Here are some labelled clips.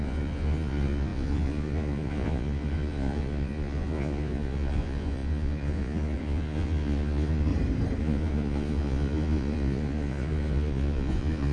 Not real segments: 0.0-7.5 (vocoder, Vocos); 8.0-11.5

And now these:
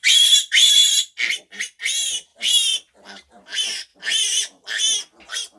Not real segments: 0.0-0.8 (vocoder, BigVGAN v2); 1.4-2.3; 2.9-3.9

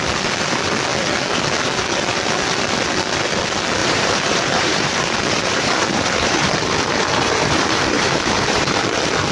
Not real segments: 3.8-8.8 (vocoder, BigVGAN v2)

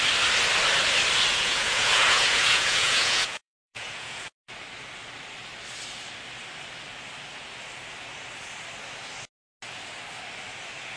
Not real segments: 1.3-4.5 (vocoder, Vocos)

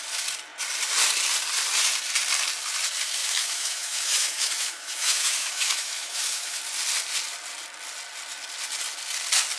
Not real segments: 3.2-6.6 (autoencoder, DAC-VAE)

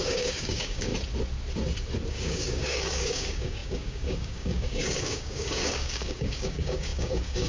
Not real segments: 0.0-0.9 (codec, DAC); 2.1-7.5

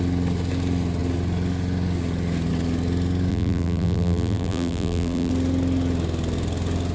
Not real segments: 3.3-5.3 (vocoder, BigVGAN v2)

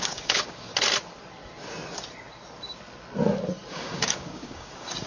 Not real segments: 0.0-0.7 (codec, DAC); 3.7-5.1